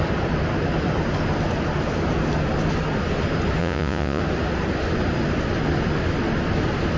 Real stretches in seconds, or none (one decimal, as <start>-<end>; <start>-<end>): 0.0-3.6; 4.2-7.0